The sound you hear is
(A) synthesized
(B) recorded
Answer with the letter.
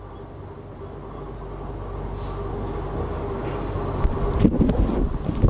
B